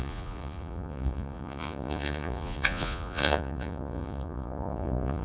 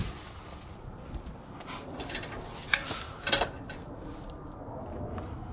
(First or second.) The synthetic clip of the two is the first